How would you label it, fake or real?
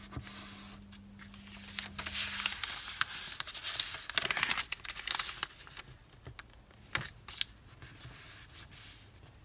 real